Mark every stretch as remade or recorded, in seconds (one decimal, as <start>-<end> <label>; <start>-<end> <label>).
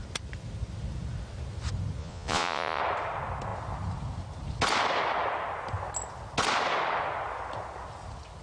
0.0-2.0 recorded; 2.0-2.8 remade; 2.8-8.4 recorded